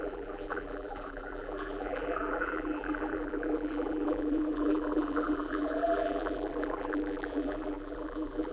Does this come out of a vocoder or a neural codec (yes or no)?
yes